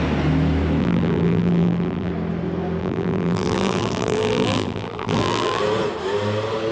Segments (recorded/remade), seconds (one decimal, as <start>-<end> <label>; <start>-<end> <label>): 0.0-0.8 recorded; 0.8-2.1 remade; 2.1-2.8 recorded; 2.8-5.6 remade; 5.6-6.7 recorded